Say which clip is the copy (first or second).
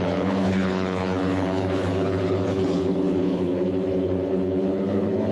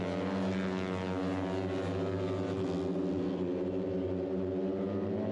first